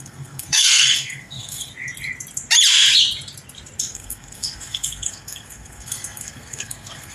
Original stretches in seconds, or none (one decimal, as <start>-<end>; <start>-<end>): 1.7-3.8